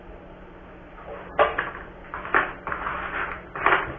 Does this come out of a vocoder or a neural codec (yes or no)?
no